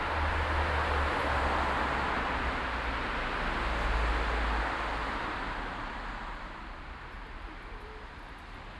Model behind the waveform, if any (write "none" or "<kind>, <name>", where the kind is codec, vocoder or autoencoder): none